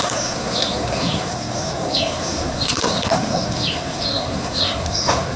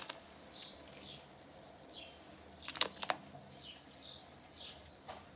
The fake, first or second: first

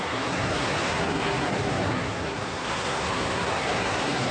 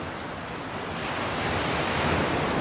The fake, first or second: first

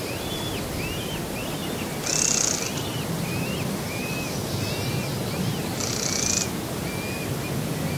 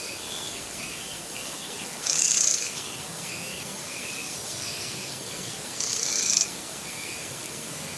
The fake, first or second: second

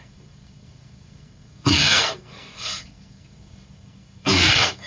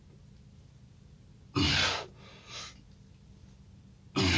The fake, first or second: first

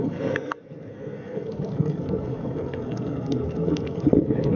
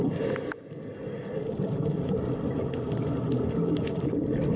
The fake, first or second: first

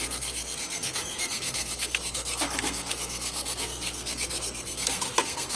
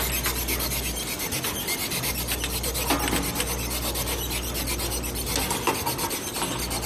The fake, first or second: first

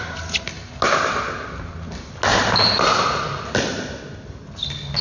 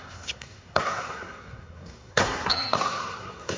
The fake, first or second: second